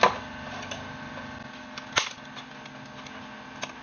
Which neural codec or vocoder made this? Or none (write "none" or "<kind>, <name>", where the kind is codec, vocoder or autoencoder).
none